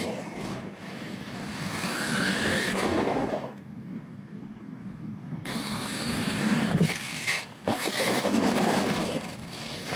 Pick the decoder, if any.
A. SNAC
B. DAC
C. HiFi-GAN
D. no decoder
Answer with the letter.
B